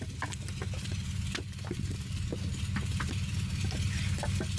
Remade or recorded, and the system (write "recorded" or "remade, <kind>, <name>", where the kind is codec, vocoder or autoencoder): recorded